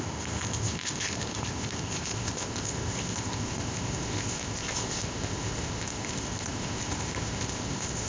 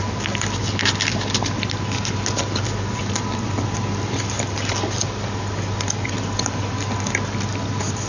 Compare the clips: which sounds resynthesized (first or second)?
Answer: first